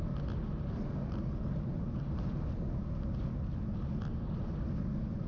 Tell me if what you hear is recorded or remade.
recorded